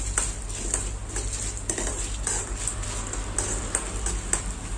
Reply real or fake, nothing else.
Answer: real